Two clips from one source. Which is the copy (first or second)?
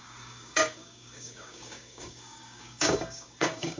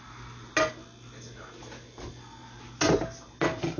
first